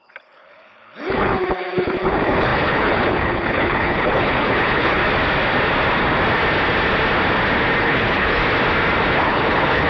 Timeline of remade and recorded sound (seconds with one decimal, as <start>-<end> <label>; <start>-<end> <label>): 0.0-5.0 remade; 5.0-7.8 recorded; 7.8-8.4 remade; 8.4-9.1 recorded; 9.1-9.9 remade